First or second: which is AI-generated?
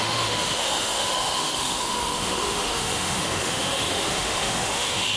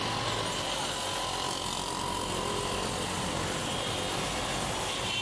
first